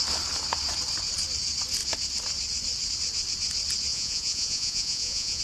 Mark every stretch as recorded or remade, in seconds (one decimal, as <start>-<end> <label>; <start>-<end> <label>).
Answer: 0.0-3.9 recorded; 3.9-5.4 remade